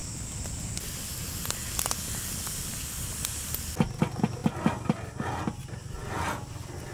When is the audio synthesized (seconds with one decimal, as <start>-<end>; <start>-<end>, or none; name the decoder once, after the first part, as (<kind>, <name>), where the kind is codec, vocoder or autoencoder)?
none